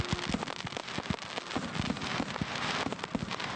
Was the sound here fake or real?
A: real